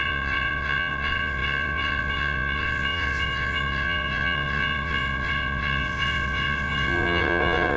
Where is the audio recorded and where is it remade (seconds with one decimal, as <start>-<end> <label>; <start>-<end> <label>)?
0.0-7.8 remade

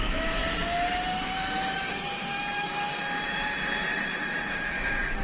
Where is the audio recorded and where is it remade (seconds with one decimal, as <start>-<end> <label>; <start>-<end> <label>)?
0.0-0.4 remade; 0.4-1.2 recorded; 1.2-2.9 remade; 2.9-4.5 recorded; 4.5-5.2 remade